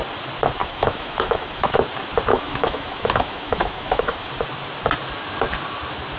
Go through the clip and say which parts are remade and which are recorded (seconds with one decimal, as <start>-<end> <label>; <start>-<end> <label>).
0.0-0.6 recorded; 0.6-1.7 remade; 1.7-2.3 recorded; 2.3-4.3 remade; 4.3-6.2 recorded